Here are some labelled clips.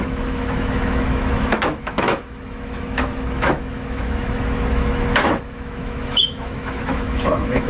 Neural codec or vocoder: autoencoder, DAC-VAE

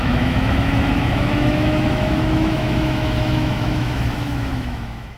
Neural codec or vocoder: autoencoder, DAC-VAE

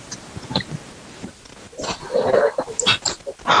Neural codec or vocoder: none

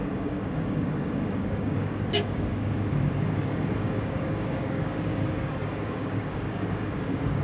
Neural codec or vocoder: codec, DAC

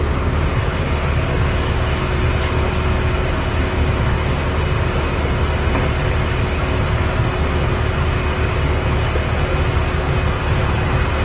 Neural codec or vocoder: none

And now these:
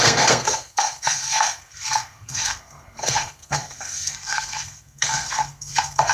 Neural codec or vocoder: codec, SNAC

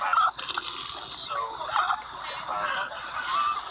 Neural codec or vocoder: none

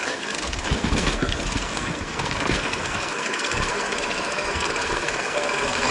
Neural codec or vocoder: codec, SNAC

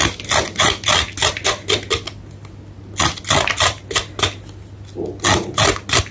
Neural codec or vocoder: none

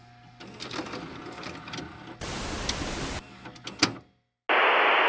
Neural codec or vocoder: none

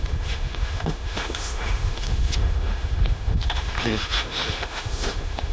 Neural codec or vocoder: autoencoder, DAC-VAE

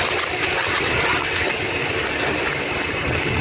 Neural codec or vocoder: none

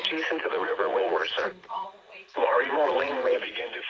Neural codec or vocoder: vocoder, Vocos